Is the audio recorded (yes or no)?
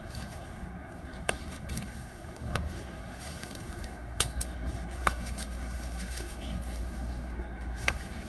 no